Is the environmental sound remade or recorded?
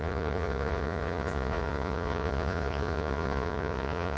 remade